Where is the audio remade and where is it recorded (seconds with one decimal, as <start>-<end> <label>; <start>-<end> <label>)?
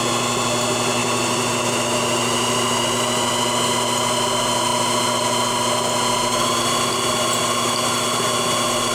0.0-8.9 recorded